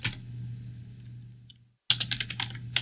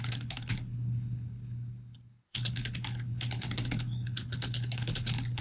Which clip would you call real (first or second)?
first